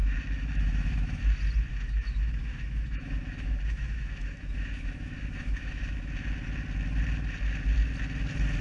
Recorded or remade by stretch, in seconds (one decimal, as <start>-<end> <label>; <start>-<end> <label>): 0.0-1.2 remade; 1.2-1.7 recorded; 1.7-6.1 remade; 6.1-8.6 recorded